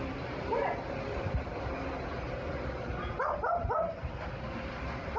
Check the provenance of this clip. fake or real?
real